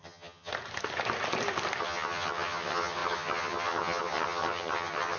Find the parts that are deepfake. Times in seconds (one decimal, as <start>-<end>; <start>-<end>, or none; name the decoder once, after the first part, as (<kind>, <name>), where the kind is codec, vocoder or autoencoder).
0.0-0.5 (vocoder, HiFi-GAN); 1.8-5.2